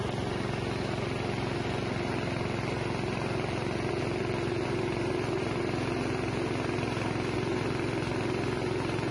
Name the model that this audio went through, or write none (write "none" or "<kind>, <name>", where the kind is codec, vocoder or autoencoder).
none